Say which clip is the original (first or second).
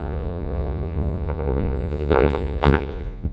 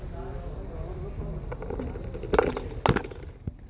second